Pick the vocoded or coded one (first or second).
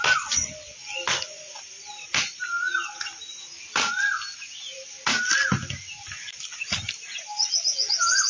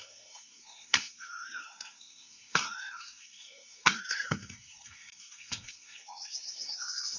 second